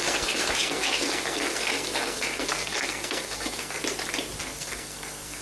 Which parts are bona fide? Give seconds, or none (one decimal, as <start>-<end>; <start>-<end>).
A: 3.8-4.4